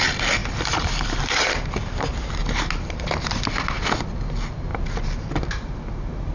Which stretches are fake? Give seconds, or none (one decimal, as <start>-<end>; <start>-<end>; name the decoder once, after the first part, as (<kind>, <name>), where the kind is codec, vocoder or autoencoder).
4.7-5.3 (vocoder, BigVGAN v2)